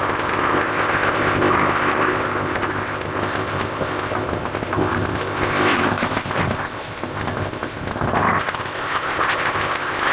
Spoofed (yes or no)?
yes